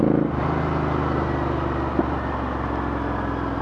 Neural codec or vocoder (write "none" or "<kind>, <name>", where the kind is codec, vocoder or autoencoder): none